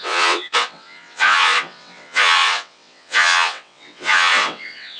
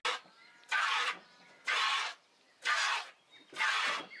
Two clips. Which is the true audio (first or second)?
second